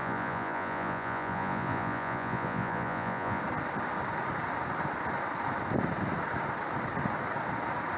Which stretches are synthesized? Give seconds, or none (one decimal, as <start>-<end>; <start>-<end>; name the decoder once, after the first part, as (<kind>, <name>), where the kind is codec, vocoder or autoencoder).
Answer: 0.0-3.4 (vocoder, Vocos)

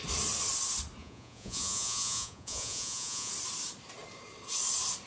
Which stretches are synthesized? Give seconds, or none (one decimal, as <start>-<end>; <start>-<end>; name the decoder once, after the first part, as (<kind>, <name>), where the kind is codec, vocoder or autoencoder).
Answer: 1.0-3.3 (vocoder, Vocos)

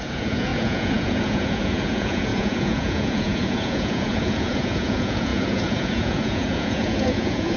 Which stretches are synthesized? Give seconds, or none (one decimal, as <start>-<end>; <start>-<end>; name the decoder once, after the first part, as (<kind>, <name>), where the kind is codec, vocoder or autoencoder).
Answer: 0.0-7.6 (vocoder, Vocos)

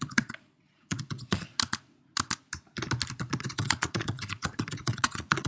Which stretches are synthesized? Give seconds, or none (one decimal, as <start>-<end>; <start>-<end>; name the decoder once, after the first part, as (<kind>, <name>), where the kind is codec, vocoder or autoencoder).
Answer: 0.0-1.5 (vocoder, Vocos); 3.4-5.5

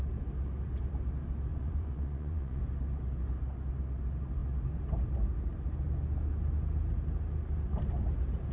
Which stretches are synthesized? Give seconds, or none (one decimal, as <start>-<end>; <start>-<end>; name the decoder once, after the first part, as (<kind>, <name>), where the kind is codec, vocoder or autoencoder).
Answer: 1.5-2.6 (vocoder, Vocos)

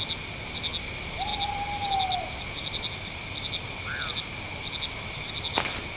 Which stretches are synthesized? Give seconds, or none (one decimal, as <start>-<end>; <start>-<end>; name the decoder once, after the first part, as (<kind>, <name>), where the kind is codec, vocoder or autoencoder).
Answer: none